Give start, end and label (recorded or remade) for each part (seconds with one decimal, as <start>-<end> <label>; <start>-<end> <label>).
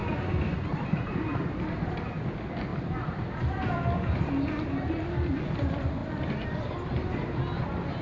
0.0-1.0 remade; 1.0-2.7 recorded; 2.7-4.0 remade; 4.0-6.0 recorded; 6.0-6.7 remade; 6.7-8.0 recorded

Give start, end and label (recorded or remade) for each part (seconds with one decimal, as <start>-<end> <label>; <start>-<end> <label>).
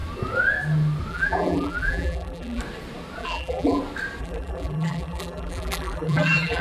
0.0-1.1 recorded; 1.1-2.6 remade; 2.6-3.2 recorded; 3.2-3.8 remade; 3.8-4.2 recorded; 4.2-6.6 remade